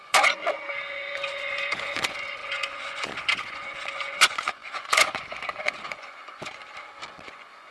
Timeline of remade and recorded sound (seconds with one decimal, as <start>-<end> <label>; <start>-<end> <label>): 0.0-0.4 remade; 0.4-0.9 recorded; 0.9-6.6 remade; 6.6-7.3 recorded; 7.3-7.7 remade